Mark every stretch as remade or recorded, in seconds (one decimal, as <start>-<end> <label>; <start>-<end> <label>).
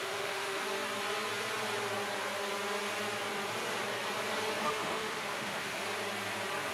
0.0-0.6 remade; 0.6-4.6 recorded; 4.6-5.8 remade; 5.8-6.7 recorded